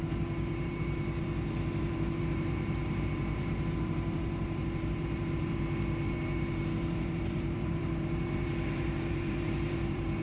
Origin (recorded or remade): remade